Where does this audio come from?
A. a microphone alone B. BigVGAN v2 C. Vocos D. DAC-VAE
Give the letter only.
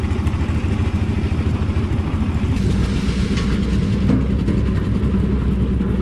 A